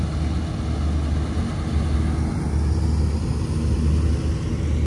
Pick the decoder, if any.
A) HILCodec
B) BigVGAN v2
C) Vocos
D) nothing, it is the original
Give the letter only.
D